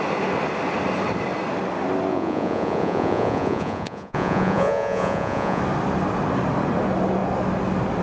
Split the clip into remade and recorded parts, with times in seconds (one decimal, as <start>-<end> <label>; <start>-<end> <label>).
0.0-2.1 recorded; 2.1-5.6 remade; 5.6-8.0 recorded